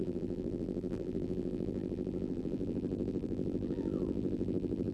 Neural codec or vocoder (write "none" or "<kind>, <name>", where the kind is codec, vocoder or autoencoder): vocoder, BigVGAN v2